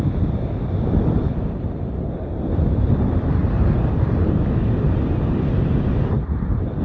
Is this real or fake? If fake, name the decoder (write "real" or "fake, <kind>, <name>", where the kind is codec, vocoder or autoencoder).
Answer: real